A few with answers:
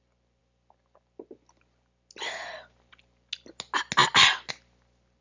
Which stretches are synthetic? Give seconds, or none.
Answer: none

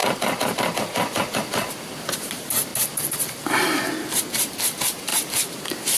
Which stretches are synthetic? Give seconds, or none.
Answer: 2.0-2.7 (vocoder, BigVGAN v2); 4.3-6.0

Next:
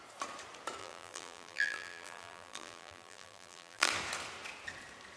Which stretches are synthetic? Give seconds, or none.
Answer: 0.8-3.9 (vocoder, BigVGAN v2)